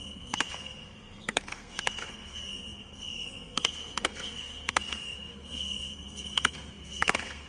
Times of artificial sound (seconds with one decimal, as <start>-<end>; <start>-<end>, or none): 0.0-7.5